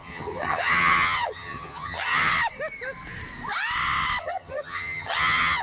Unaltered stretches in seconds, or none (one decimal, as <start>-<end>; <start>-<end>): 2.3-4.2